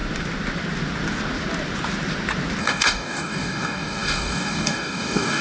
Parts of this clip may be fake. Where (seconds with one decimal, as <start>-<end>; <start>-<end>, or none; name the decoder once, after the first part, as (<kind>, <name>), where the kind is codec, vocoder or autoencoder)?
2.6-5.4 (codec, DAC)